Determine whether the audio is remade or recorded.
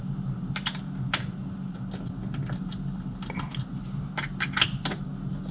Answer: recorded